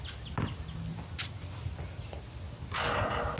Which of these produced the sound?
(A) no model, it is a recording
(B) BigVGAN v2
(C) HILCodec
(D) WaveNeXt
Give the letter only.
A